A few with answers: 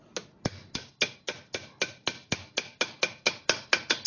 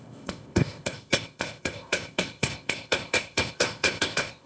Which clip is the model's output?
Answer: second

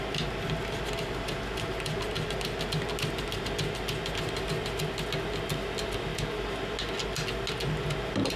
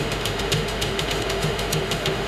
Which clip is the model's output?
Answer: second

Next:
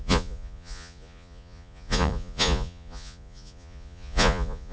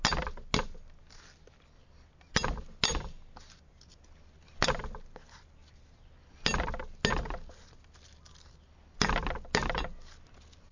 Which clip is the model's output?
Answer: first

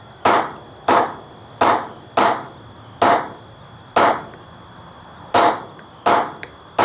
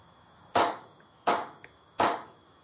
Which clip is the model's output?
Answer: second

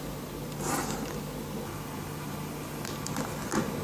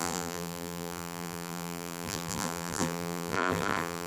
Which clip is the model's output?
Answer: second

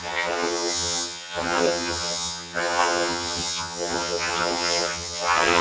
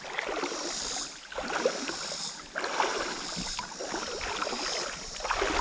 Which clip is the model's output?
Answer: first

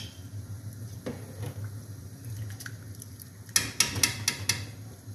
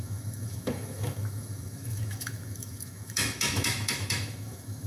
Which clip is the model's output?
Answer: second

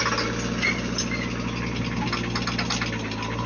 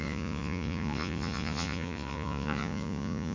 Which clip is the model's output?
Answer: second